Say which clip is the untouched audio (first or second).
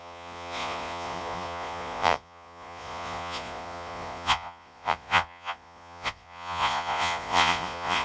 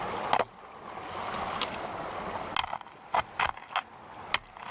second